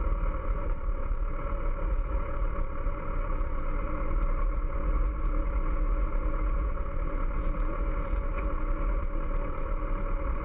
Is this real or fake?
fake